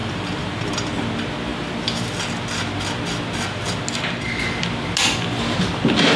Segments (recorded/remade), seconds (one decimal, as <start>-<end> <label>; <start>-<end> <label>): 0.0-0.7 remade; 0.7-1.5 recorded; 1.5-2.1 remade; 2.1-6.2 recorded